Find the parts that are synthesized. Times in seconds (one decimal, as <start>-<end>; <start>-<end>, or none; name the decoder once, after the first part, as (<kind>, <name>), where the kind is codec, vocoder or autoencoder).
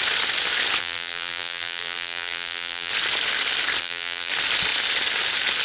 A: 0.8-2.9 (vocoder, BigVGAN v2); 3.8-4.3